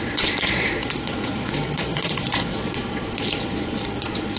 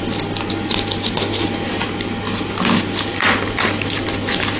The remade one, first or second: first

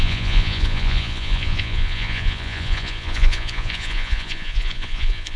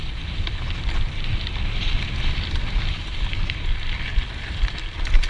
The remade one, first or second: first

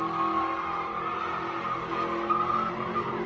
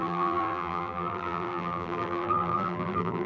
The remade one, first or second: second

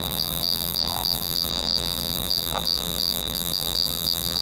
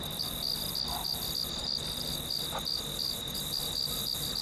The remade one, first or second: first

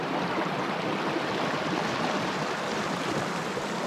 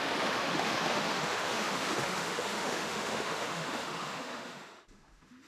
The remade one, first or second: second